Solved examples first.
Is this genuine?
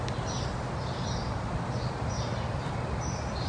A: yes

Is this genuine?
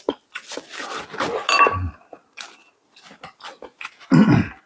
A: yes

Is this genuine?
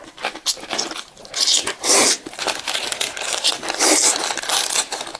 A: yes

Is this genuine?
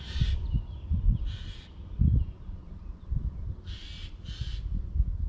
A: yes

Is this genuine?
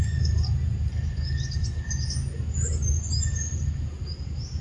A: yes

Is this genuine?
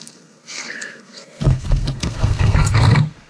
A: no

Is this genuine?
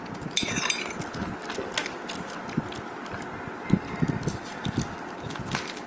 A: yes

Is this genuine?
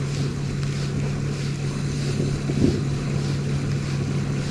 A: yes